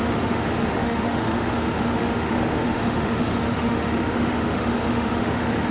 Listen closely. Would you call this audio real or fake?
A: fake